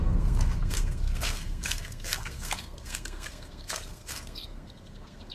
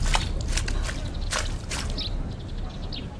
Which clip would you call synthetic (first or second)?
first